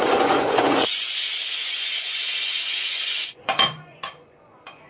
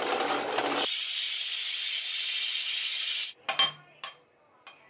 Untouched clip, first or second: second